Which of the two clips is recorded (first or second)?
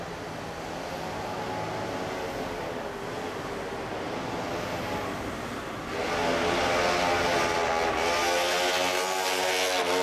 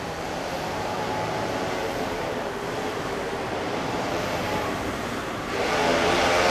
first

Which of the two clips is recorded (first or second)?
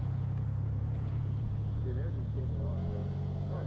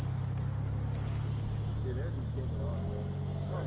second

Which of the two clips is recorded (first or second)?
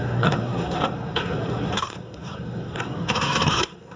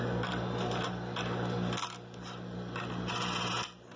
second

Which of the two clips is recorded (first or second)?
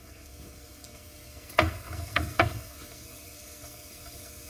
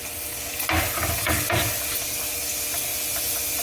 second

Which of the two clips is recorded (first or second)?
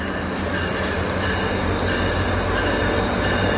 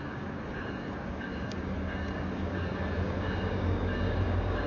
first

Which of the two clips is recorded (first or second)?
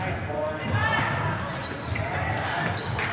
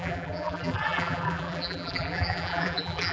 first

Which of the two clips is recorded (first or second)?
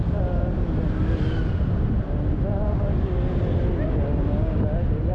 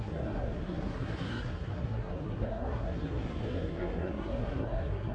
first